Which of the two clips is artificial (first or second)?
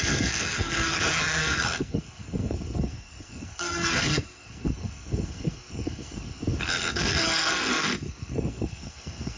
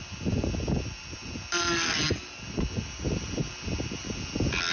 first